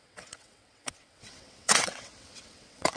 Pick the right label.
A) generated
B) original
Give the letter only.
A